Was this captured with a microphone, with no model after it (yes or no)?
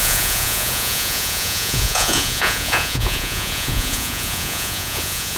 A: no